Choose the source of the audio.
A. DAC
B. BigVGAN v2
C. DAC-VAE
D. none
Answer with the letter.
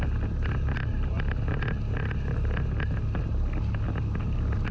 D